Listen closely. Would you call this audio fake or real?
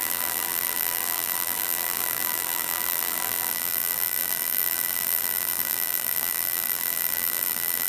fake